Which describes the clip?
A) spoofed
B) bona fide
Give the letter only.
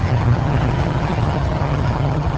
A